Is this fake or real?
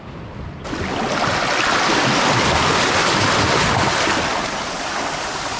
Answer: real